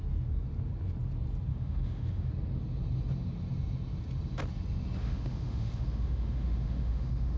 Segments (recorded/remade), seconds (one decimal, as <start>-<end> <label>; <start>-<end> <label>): 0.0-1.5 recorded; 1.5-2.3 remade; 2.3-5.0 recorded; 5.0-7.4 remade

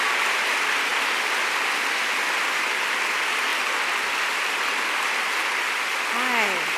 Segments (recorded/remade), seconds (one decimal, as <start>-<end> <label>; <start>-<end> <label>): 0.0-6.8 recorded

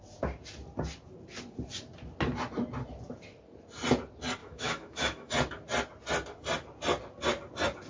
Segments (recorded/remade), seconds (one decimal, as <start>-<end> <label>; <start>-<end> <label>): 0.0-4.4 recorded; 4.4-5.3 remade; 5.3-7.9 recorded

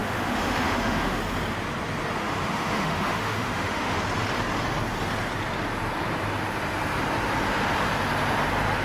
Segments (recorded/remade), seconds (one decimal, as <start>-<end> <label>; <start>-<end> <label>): 0.0-1.2 remade; 1.2-2.2 recorded; 2.2-4.0 remade; 4.0-8.8 recorded

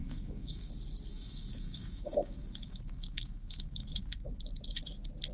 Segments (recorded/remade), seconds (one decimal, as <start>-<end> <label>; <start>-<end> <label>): 0.0-0.7 remade; 0.7-1.1 recorded; 1.1-4.3 remade; 4.3-5.3 recorded

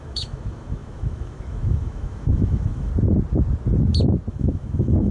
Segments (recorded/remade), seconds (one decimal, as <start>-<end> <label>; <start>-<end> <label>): 0.0-2.9 remade; 2.9-4.3 recorded; 4.3-5.1 remade

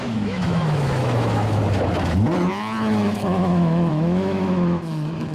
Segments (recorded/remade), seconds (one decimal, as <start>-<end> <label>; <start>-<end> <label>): 0.0-1.6 remade; 1.6-2.5 recorded; 2.5-5.3 remade